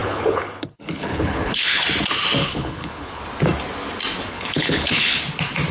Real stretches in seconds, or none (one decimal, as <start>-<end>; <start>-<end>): 1.8-2.4; 3.2-4.3; 5.2-5.7